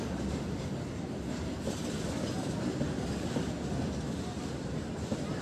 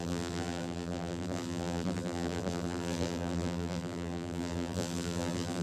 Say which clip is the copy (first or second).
second